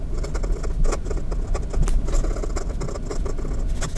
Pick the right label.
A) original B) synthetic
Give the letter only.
A